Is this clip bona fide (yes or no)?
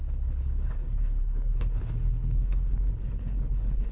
no